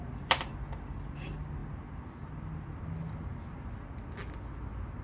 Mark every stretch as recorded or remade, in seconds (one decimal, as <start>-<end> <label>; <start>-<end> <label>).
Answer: 0.0-5.0 recorded